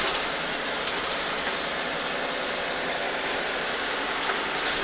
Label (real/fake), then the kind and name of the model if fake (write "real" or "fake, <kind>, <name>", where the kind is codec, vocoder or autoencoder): real